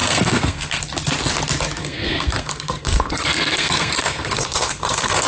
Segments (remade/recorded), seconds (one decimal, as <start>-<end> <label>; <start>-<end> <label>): 0.0-0.8 remade; 0.8-1.8 recorded; 1.8-5.3 remade